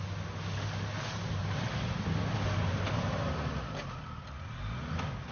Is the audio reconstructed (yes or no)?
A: no